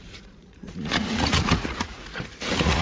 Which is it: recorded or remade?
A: remade